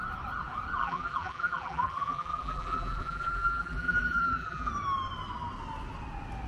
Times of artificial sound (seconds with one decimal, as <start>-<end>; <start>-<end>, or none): 0.8-4.7